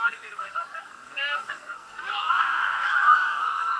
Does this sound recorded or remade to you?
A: remade